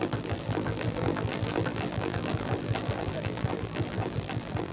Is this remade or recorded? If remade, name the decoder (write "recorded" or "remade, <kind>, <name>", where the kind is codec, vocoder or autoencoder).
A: remade, vocoder, BigVGAN v2